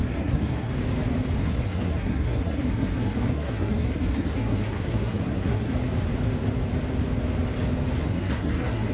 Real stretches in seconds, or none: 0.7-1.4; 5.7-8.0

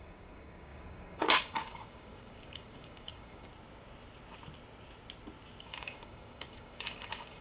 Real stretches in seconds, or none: 3.5-5.6

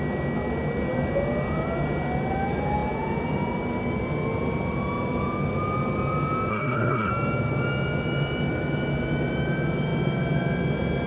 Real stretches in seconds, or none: 0.0-6.5; 7.1-11.1